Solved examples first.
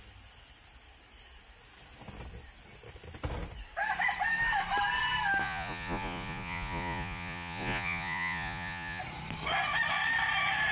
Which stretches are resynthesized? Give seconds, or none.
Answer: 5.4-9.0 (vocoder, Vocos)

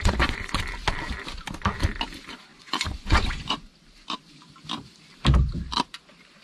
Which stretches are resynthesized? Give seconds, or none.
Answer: 0.0-0.6 (vocoder, Vocos); 2.5-3.7

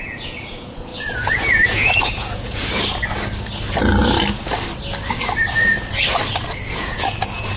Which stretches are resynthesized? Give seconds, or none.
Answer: 0.0-2.7 (vocoder, Vocos); 6.7-7.6

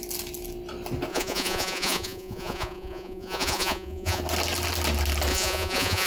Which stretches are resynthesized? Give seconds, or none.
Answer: 1.1-4.2 (vocoder, Vocos); 5.3-6.1

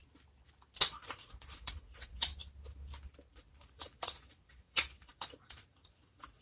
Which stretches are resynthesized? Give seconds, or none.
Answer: 0.9-2.3 (vocoder, Vocos); 3.3-6.4

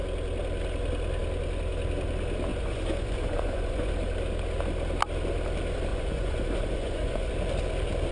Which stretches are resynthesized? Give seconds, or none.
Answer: 2.5-3.9 (vocoder, Vocos); 5.9-7.3

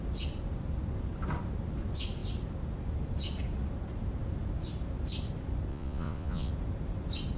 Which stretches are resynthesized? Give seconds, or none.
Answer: 5.7-6.5 (vocoder, Vocos)